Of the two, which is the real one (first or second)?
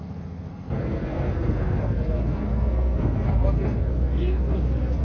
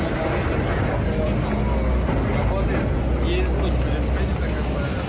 second